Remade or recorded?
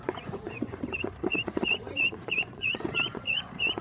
remade